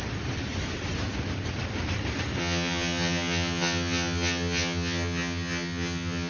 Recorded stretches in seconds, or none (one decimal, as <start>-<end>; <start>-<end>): 0.0-2.4